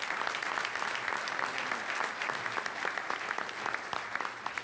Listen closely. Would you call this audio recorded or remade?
recorded